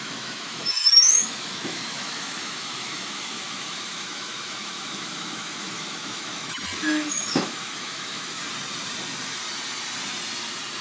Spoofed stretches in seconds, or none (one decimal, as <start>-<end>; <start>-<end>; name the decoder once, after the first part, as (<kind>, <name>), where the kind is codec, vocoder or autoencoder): 0.0-8.4 (autoencoder, DAC-VAE)